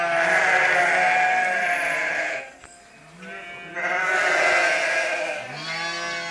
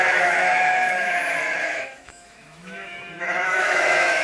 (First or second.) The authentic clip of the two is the first